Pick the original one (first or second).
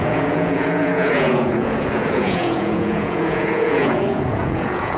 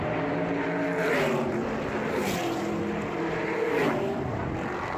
second